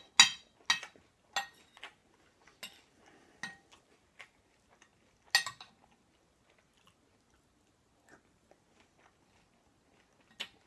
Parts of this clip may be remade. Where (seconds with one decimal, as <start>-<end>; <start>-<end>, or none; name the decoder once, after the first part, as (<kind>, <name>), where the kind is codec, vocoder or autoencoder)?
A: none